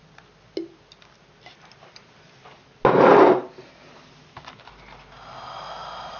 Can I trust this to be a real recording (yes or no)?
yes